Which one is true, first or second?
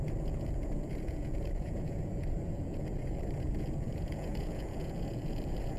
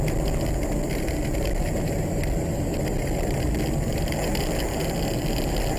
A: second